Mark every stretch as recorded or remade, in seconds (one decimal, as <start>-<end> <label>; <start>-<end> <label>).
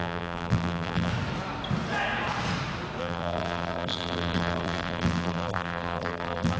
0.0-1.1 remade; 1.1-3.0 recorded; 3.0-6.6 remade